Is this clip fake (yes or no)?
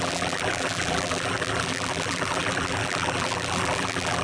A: yes